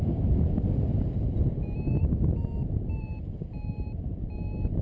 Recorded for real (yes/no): yes